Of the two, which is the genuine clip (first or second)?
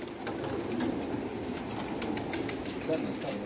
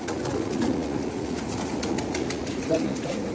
first